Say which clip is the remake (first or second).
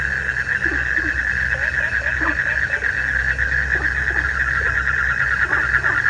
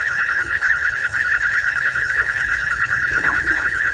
second